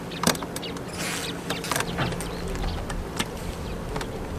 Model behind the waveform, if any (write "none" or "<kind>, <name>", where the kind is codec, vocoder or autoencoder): none